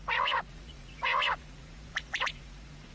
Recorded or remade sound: remade